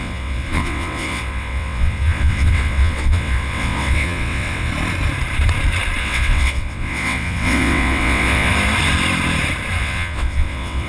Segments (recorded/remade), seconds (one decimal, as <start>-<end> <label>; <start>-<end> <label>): 0.0-4.7 remade; 4.7-6.0 recorded; 6.0-8.5 remade; 8.5-9.8 recorded; 9.8-10.9 remade